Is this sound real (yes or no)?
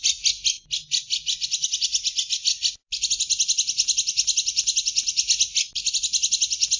yes